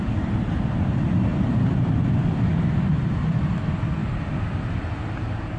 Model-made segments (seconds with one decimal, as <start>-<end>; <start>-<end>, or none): 1.3-1.9; 2.5-3.5; 4.0-4.8